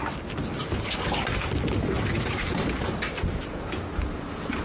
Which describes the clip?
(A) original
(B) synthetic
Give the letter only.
A